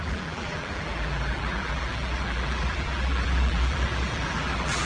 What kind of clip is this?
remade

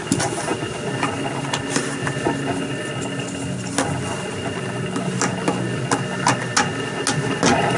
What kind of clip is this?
recorded